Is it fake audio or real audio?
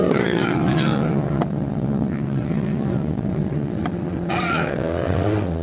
fake